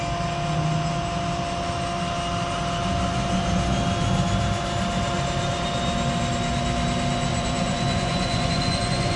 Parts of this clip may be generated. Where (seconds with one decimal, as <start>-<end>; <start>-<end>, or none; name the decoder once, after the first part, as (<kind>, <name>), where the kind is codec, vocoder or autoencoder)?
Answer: 7.3-9.2 (vocoder, Vocos)